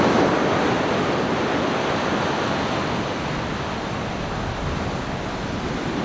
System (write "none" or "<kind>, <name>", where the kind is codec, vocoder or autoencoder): none